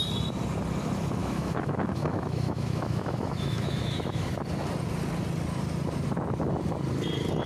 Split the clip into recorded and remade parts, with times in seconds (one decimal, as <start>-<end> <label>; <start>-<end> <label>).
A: 0.0-1.2 recorded; 1.2-4.3 remade; 4.3-7.5 recorded